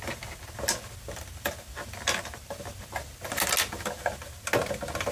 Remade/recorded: recorded